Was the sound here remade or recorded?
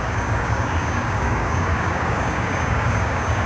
remade